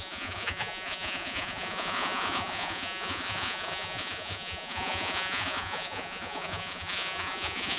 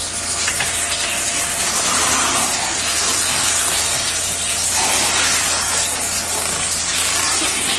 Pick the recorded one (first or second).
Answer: second